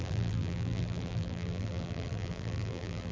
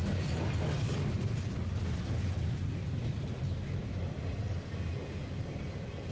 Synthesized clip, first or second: first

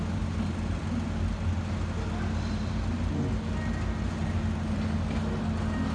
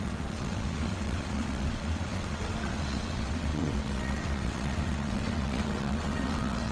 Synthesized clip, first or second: second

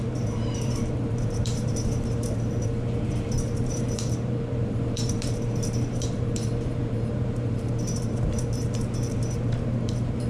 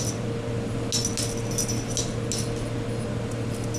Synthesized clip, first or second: first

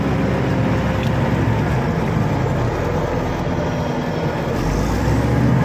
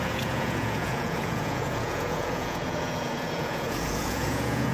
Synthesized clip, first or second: second